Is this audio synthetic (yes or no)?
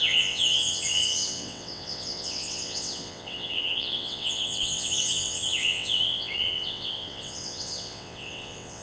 yes